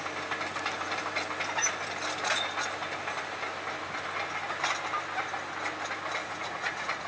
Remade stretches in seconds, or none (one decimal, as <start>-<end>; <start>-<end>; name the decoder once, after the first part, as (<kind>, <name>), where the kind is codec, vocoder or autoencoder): 6.2-7.1 (vocoder, Vocos)